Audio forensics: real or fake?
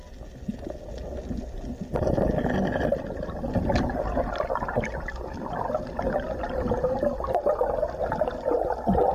real